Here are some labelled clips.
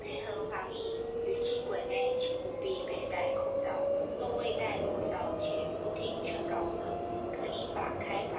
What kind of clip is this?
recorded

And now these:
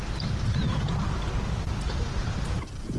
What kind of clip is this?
recorded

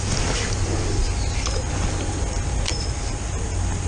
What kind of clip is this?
recorded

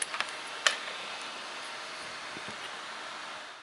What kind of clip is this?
recorded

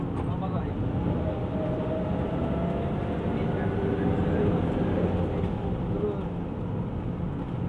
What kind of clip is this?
recorded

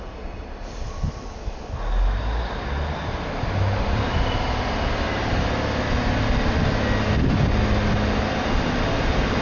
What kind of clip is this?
recorded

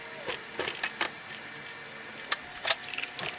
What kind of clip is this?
recorded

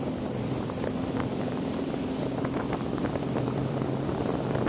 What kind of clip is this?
remade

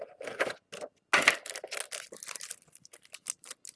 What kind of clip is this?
recorded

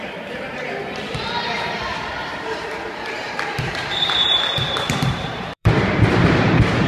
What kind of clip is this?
remade